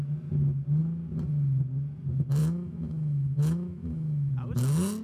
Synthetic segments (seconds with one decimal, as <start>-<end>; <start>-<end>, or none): 2.4-4.3